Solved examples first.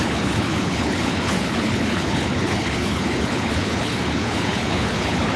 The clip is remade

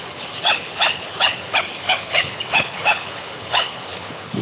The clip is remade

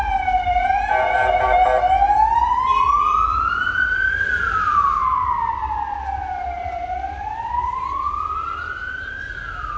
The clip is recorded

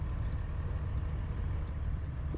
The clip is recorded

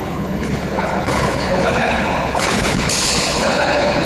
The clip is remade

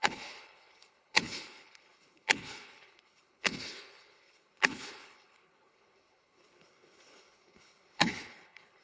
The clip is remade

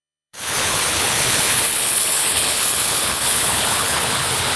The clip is remade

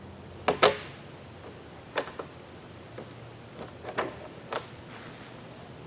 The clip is recorded